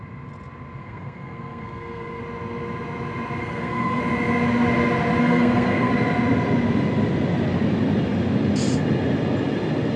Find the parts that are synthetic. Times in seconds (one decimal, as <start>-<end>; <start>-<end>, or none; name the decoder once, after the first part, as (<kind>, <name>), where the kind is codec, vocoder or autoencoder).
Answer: 0.8-2.2 (codec, SNAC); 3.4-4.0; 5.2-5.9